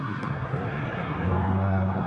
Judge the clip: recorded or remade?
remade